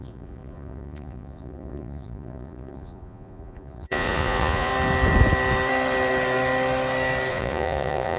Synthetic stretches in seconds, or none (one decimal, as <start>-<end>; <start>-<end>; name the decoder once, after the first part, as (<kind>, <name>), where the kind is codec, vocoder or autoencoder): 0.0-4.7 (vocoder, Vocos); 7.3-8.2